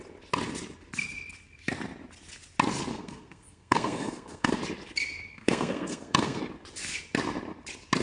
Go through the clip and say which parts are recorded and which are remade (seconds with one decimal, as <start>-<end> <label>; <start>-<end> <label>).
0.0-2.9 recorded; 2.9-4.6 remade; 4.6-5.3 recorded; 5.3-6.4 remade; 6.4-8.0 recorded